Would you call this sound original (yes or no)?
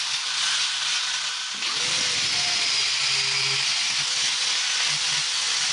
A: yes